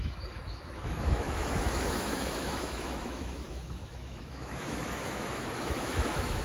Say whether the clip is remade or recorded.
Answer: remade